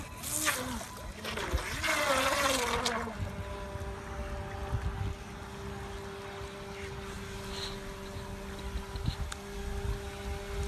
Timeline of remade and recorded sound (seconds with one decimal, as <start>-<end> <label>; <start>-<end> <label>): 0.0-10.7 recorded

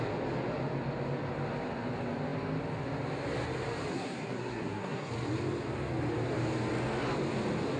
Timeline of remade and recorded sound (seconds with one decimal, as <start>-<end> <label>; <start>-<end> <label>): 0.0-3.9 recorded; 3.9-5.1 remade; 5.1-7.8 recorded

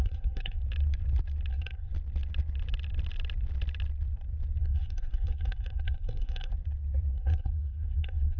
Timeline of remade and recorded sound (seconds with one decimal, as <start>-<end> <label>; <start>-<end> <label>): 0.0-0.6 remade; 0.6-1.5 recorded; 1.5-1.9 remade; 1.9-4.6 recorded; 4.6-6.5 remade; 6.5-7.1 recorded; 7.1-8.4 remade

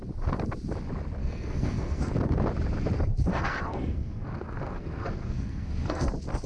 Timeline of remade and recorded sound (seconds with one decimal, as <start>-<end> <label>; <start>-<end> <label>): 0.0-1.2 recorded; 1.2-2.1 remade; 2.1-3.3 recorded; 3.3-6.1 remade; 6.1-6.5 recorded